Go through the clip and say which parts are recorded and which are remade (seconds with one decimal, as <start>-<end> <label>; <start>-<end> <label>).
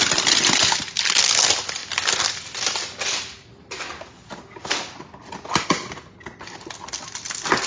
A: 0.0-7.7 recorded